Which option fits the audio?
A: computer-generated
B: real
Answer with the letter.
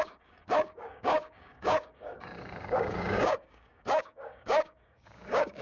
A